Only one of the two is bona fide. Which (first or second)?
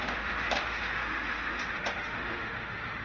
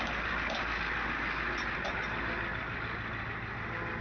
second